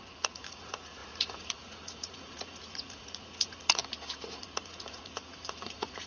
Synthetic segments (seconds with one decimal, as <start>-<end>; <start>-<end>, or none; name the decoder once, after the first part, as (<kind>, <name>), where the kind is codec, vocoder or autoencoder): 0.0-3.8 (vocoder, Vocos); 4.4-6.1